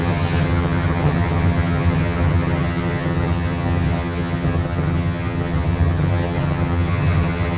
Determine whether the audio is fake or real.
fake